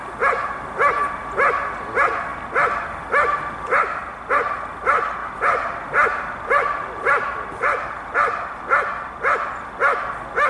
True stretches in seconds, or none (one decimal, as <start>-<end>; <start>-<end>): 0.0-5.2; 9.1-10.5